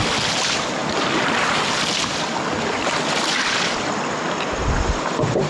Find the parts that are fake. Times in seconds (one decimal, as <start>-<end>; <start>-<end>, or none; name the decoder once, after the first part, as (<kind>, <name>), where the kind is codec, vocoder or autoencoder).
none